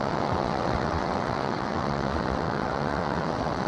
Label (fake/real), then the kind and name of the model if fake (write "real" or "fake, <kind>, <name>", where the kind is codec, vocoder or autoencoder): fake, vocoder, WaveNeXt